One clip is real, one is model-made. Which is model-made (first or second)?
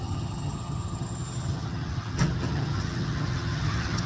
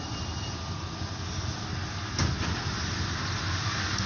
first